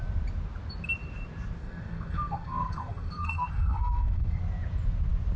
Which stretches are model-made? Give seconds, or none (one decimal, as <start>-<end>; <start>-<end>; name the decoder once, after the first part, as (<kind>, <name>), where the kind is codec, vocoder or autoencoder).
1.6-4.4 (codec, SNAC)